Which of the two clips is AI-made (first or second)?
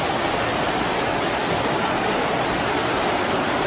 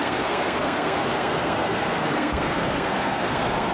second